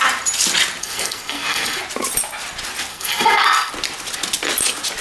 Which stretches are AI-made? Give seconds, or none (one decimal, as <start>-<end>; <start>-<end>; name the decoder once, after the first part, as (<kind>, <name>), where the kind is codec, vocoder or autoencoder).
0.8-1.8 (codec, SNAC); 2.9-3.7